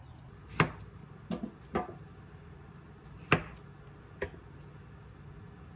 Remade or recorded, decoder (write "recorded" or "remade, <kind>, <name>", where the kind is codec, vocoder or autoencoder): recorded